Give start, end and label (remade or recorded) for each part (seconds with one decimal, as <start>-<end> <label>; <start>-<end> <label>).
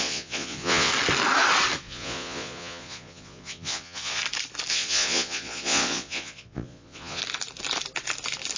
0.0-0.9 remade; 0.9-1.8 recorded; 1.8-4.2 remade; 4.2-4.7 recorded; 4.7-7.2 remade; 7.2-8.6 recorded